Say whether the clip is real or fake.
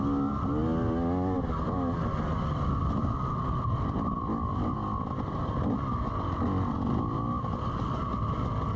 real